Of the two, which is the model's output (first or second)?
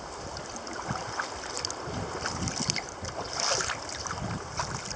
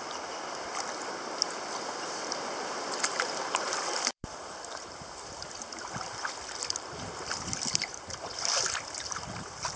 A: second